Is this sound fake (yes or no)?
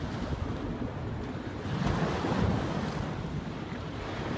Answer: no